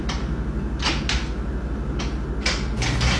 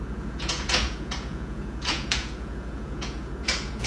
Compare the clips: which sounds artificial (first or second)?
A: second